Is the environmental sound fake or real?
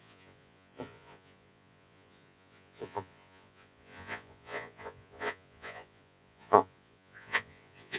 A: fake